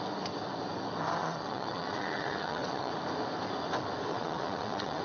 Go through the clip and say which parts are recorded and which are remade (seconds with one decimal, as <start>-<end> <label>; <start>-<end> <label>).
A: 0.0-1.2 recorded; 1.2-2.9 remade; 2.9-4.1 recorded; 4.1-5.0 remade